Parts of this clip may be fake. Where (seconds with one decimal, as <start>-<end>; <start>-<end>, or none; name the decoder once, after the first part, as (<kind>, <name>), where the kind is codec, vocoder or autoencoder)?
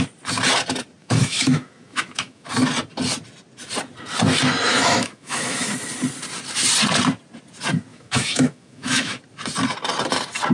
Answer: 1.0-2.5 (autoencoder, DAC-VAE); 4.7-5.7; 7.9-9.2